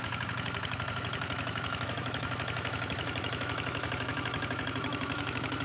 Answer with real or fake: fake